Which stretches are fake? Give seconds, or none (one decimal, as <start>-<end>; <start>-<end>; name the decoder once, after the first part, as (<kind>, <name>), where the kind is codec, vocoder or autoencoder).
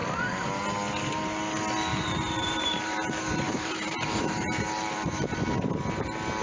0.0-0.6 (vocoder, BigVGAN v2); 1.9-5.7